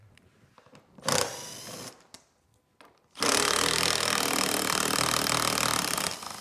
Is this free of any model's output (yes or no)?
yes